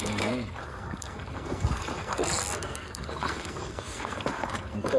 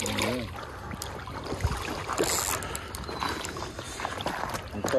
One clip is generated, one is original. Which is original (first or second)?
second